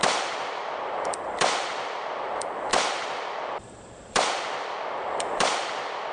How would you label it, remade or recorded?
remade